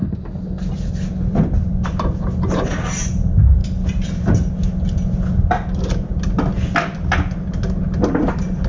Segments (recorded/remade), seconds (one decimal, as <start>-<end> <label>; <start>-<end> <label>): 0.0-8.7 recorded